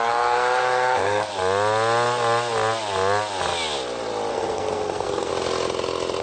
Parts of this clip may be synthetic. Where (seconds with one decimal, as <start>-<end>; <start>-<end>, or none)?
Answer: 0.0-1.3; 4.3-5.3